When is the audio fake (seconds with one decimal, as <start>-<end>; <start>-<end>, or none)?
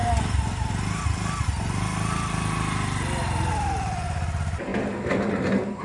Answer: none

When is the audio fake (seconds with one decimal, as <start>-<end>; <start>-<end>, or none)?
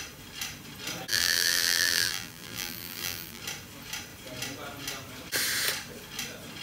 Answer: 1.1-3.4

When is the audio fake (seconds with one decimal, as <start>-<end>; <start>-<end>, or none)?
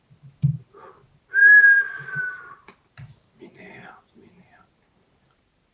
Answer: none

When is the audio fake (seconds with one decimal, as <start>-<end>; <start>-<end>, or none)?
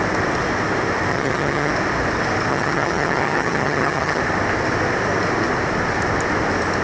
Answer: 1.1-1.7; 2.5-4.2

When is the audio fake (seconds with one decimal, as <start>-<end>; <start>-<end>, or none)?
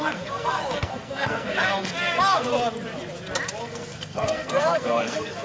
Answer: 0.0-2.5; 3.6-5.4